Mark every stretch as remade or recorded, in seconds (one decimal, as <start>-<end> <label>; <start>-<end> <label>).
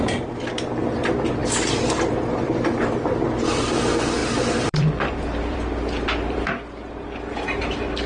0.0-4.2 recorded; 4.2-6.5 remade; 6.5-8.1 recorded